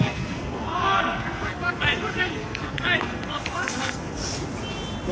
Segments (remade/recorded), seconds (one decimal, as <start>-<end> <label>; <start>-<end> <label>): 0.0-4.2 remade; 4.2-5.1 recorded